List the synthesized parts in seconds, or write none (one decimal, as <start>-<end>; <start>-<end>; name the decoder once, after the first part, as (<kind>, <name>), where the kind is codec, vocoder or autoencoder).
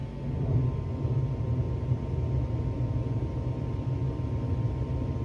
none